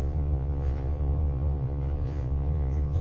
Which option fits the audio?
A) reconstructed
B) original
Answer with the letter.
A